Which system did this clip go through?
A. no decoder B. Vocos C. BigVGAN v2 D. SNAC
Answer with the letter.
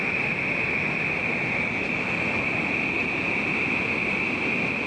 A